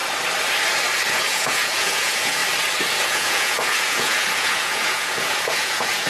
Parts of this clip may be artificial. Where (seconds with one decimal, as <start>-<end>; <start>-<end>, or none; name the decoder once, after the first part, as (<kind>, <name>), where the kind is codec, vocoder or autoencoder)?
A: 1.1-2.4 (vocoder, Vocos); 2.9-6.1